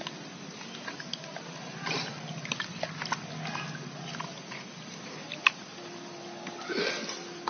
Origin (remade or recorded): recorded